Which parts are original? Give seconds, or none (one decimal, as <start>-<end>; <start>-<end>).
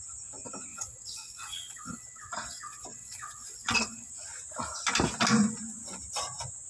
0.0-0.7; 4.1-6.7